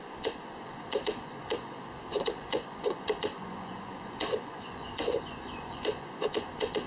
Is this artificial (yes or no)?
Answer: yes